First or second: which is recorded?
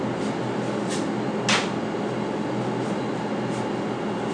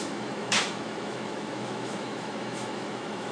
first